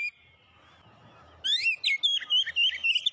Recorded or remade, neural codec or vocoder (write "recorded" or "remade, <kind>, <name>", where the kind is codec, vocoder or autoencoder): recorded